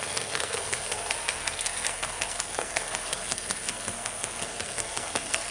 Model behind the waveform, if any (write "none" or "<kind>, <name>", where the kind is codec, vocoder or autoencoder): codec, SNAC